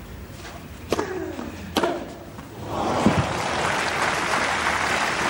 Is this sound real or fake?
real